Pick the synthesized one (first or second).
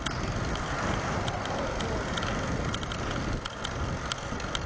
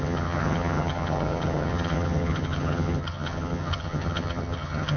second